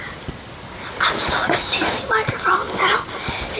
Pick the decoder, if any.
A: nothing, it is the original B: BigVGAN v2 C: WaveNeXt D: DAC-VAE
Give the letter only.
A